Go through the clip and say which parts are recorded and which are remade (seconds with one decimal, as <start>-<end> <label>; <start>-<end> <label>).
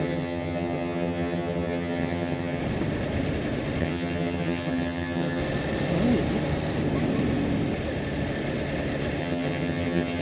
0.0-2.6 remade; 2.6-3.8 recorded; 3.8-5.4 remade; 5.4-9.2 recorded; 9.2-10.2 remade